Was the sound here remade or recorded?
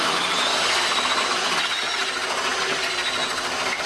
recorded